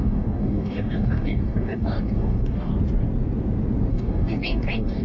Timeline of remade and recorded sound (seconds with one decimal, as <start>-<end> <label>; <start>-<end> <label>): 0.0-2.7 remade; 2.7-3.9 recorded; 3.9-5.0 remade